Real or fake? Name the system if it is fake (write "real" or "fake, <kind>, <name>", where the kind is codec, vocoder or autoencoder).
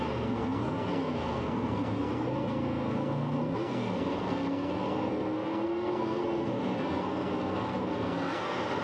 fake, codec, SNAC